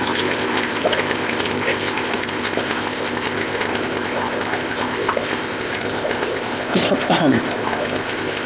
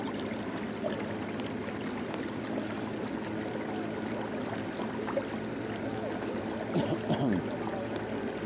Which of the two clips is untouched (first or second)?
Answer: second